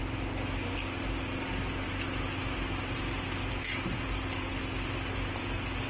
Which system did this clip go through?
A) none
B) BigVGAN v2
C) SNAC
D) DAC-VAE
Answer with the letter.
A